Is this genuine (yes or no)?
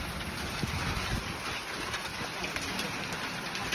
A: yes